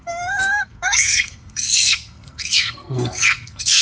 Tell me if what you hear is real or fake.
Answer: fake